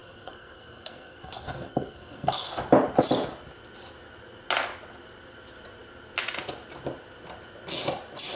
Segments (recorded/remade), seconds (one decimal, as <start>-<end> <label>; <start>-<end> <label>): 0.0-2.5 remade; 2.5-8.4 recorded